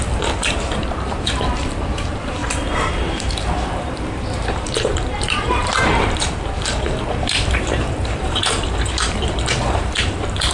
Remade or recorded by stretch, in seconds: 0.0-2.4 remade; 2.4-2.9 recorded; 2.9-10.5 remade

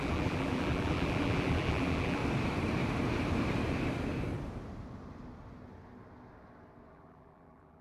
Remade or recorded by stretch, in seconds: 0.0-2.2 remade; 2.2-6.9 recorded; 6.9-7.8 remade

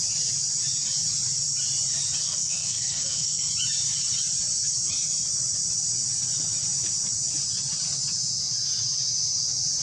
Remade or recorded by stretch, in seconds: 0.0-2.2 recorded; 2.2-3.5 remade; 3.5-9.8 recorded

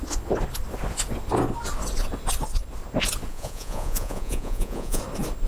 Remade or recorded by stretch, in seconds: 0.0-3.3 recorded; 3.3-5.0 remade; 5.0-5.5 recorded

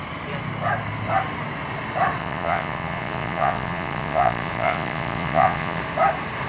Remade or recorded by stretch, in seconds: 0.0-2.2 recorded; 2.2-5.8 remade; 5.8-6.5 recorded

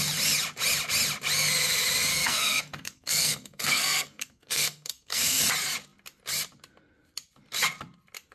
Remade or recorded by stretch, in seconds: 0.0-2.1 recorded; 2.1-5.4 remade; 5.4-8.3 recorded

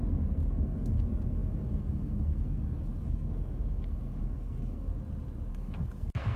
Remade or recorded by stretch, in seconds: 0.0-4.9 remade; 4.9-5.5 recorded; 5.5-6.4 remade

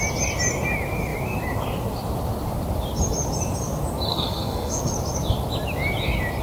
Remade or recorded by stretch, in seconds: 0.0-4.1 recorded; 4.1-4.9 remade; 4.9-6.4 recorded